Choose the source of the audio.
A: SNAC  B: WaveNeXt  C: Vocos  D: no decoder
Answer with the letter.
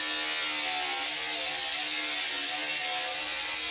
D